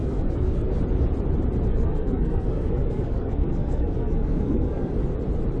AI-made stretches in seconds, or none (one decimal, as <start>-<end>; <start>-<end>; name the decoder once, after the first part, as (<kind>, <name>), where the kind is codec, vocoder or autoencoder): 0.0-0.7 (codec, SNAC); 1.7-4.9